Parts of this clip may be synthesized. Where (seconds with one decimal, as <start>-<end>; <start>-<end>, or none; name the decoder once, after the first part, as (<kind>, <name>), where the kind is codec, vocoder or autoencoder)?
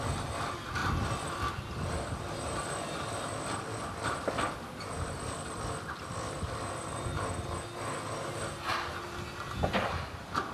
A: none